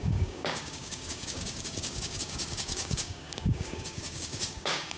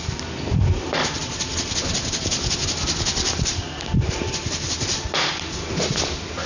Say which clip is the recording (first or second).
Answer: second